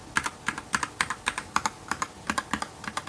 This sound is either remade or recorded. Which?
recorded